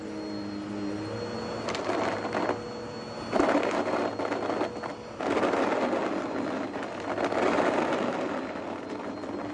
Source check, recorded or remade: recorded